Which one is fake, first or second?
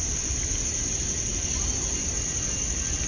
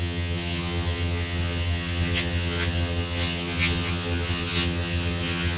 second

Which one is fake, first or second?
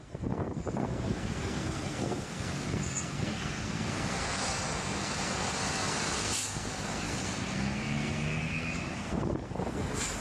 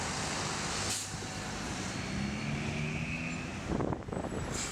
first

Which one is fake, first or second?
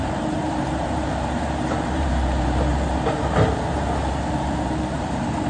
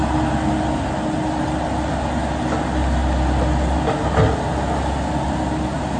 first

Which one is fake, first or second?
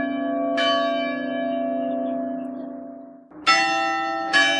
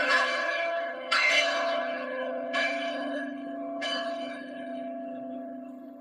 second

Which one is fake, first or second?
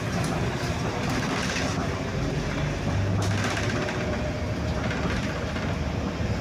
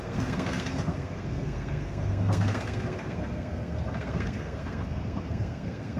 second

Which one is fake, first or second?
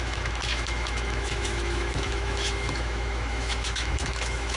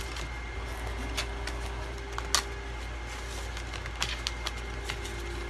first